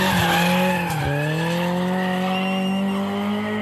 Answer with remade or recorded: recorded